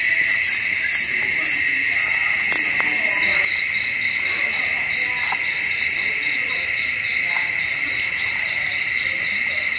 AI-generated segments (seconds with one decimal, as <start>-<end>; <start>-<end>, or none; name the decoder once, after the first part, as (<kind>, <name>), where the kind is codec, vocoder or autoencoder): none